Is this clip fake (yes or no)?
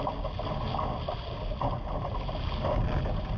no